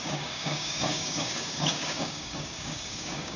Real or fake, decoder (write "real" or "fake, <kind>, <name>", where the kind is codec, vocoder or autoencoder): fake, codec, DAC